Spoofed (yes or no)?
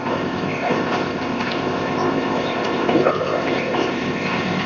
yes